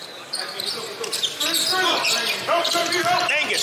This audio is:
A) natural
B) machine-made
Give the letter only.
A